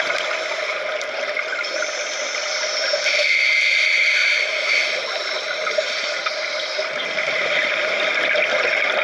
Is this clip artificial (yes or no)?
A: no